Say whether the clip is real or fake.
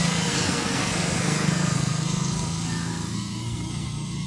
fake